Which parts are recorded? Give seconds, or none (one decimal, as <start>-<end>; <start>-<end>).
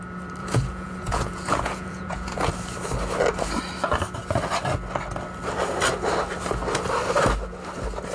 0.0-0.4; 2.5-8.1